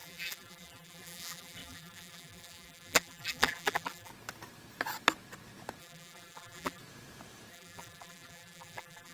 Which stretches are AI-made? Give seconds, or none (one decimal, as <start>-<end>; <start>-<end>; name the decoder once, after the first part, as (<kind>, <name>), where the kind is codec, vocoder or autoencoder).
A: 0.0-4.1 (vocoder, BigVGAN v2); 5.8-6.8; 7.5-9.1